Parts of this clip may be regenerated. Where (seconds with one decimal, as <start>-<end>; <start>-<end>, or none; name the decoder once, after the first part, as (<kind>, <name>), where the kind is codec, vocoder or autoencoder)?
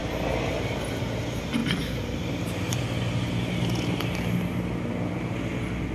none